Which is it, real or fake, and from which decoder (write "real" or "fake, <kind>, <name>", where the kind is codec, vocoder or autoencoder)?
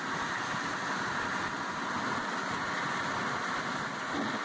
real